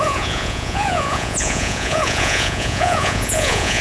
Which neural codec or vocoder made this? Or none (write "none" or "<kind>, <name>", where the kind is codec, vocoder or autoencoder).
vocoder, Vocos